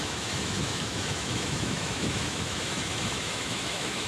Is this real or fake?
fake